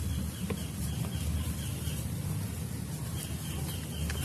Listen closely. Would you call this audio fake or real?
fake